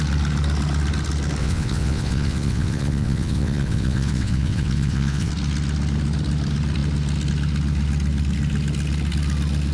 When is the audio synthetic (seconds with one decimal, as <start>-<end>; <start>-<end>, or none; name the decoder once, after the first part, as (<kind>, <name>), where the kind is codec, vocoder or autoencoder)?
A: 1.4-5.3 (vocoder, WaveNeXt)